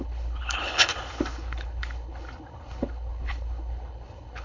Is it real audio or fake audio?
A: fake